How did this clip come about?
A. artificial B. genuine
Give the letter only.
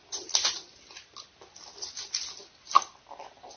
B